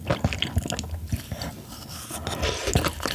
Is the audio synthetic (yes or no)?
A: no